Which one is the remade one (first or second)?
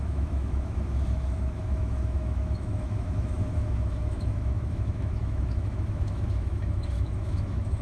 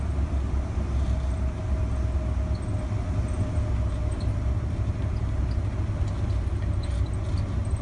first